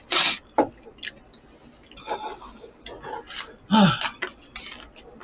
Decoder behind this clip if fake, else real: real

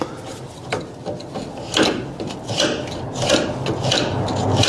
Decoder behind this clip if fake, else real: real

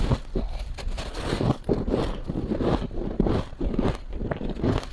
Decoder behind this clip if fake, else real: real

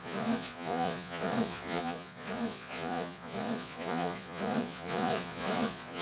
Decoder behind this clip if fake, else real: fake, vocoder, Vocos